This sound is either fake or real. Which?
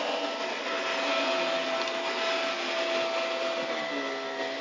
real